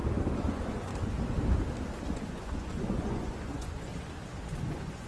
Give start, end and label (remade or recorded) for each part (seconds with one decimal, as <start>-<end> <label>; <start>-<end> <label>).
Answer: 0.0-0.5 recorded; 0.5-0.9 remade; 0.9-2.1 recorded; 2.1-3.9 remade; 3.9-4.6 recorded; 4.6-5.1 remade